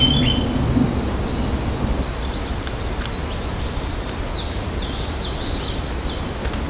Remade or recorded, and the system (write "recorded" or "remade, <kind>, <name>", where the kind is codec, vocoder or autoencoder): recorded